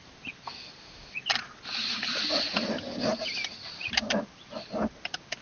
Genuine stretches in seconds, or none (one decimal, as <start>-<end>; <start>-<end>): 0.0-5.4